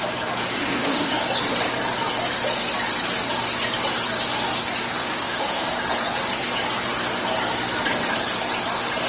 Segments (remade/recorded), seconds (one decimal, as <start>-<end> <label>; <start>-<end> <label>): 0.0-0.6 recorded; 0.6-1.1 remade; 1.1-5.0 recorded; 5.0-5.7 remade; 5.7-9.1 recorded